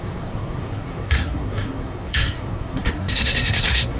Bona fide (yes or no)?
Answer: no